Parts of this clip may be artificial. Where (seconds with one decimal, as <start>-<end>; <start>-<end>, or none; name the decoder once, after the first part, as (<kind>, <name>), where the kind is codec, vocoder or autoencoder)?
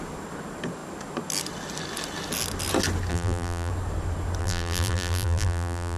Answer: 3.1-3.7 (vocoder, BigVGAN v2); 4.4-6.0